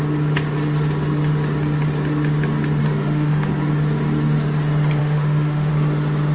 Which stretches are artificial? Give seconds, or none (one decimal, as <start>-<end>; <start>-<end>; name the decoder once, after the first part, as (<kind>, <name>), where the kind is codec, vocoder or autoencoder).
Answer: 2.8-3.5 (autoencoder, DAC-VAE); 5.0-5.7